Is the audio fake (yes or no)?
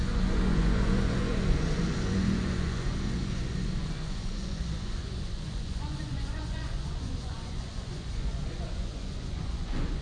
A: yes